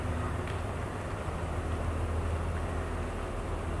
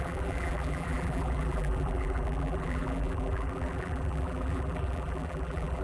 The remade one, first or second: second